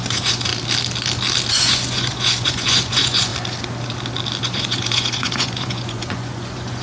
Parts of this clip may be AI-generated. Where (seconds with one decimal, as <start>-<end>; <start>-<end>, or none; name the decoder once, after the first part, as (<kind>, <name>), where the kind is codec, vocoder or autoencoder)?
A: 0.0-0.5 (vocoder, Vocos); 1.5-3.3; 4.4-6.8